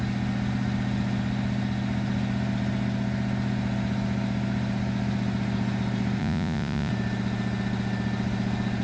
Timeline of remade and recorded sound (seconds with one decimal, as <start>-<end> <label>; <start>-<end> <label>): 0.0-6.2 recorded; 6.2-6.9 remade; 6.9-8.8 recorded